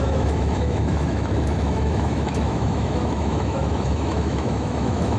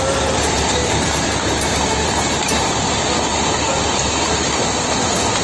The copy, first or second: first